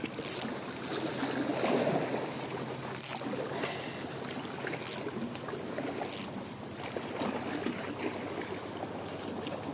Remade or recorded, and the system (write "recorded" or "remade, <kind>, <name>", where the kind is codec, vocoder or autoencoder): recorded